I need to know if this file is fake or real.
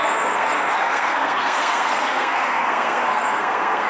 fake